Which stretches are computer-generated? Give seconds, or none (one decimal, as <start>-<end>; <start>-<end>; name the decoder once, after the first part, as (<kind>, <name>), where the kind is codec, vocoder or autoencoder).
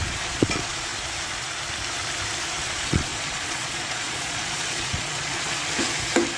0.0-0.9 (vocoder, Vocos); 2.6-5.6